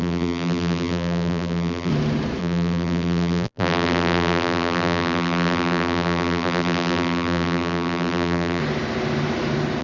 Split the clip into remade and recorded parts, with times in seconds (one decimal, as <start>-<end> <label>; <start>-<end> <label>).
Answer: 0.0-1.9 remade; 1.9-2.4 recorded; 2.4-8.6 remade; 8.6-9.8 recorded